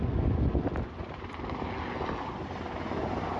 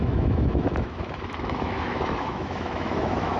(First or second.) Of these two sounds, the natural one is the first